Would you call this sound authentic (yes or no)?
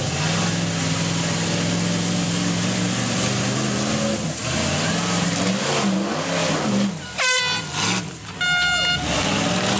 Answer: yes